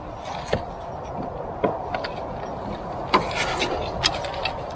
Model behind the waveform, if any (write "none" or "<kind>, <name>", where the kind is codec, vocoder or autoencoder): none